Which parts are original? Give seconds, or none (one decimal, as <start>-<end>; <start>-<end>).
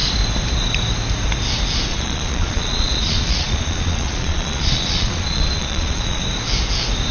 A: 0.0-1.9; 6.2-7.1